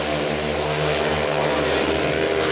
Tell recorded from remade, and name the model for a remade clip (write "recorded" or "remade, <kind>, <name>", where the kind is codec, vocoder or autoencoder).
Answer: recorded